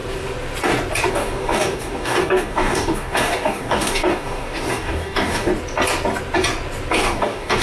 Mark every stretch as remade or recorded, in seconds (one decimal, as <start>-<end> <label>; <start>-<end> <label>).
0.0-1.1 recorded; 1.1-5.5 remade; 5.5-6.9 recorded; 6.9-7.6 remade